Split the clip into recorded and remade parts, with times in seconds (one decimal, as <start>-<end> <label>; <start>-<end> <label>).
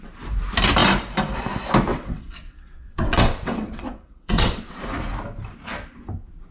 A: 0.0-1.9 recorded; 1.9-4.8 remade; 4.8-6.5 recorded